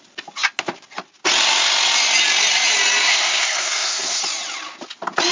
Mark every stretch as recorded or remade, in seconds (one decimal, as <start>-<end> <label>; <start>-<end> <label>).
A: 0.0-3.1 recorded; 3.1-4.2 remade; 4.2-5.3 recorded

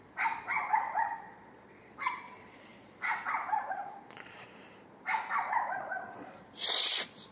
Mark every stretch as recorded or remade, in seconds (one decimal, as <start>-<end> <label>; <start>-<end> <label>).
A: 0.0-4.6 remade; 4.6-5.3 recorded; 5.3-7.3 remade

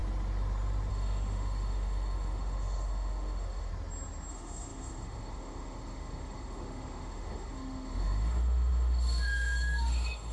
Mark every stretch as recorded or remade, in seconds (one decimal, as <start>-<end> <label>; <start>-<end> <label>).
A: 0.0-0.9 recorded; 0.9-3.7 remade; 3.7-4.3 recorded; 4.3-10.3 remade

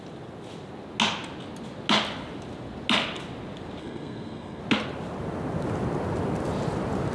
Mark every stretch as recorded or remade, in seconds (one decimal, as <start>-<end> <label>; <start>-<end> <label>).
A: 0.0-3.8 recorded; 3.8-4.6 remade; 4.6-7.1 recorded